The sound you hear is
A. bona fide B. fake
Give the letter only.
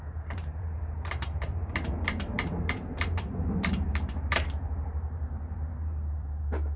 B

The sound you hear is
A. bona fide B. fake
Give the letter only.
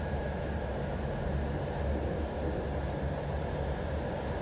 A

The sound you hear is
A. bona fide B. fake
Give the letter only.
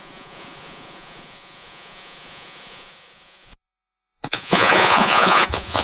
B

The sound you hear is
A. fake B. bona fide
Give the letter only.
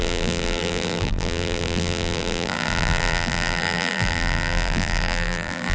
A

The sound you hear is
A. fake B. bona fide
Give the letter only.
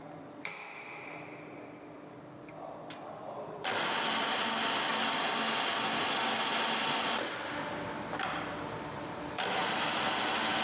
B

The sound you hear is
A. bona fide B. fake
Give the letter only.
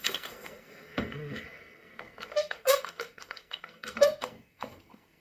B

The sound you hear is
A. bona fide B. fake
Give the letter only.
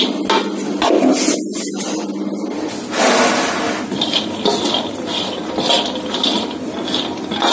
A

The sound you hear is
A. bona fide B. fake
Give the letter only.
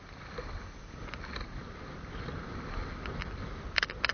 A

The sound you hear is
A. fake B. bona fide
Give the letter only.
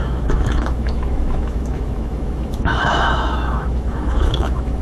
A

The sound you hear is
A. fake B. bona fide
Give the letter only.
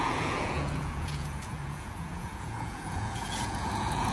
A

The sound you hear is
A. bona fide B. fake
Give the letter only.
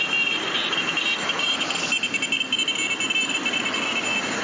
A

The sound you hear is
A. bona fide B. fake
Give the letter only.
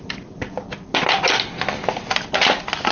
A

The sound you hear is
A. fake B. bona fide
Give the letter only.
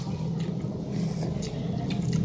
B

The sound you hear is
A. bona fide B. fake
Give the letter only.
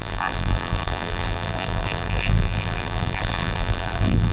B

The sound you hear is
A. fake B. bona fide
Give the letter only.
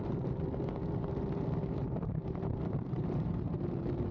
A